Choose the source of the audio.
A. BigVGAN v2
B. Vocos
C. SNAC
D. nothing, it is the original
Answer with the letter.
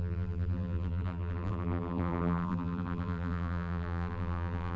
A